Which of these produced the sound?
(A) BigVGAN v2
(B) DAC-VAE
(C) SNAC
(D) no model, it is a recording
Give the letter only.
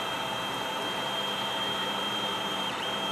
A